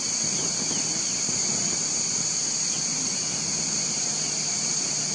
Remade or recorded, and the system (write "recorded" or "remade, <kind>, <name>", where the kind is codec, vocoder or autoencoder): recorded